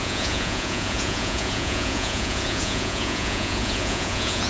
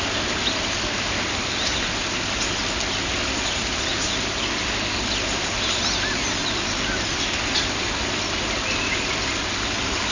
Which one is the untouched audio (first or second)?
second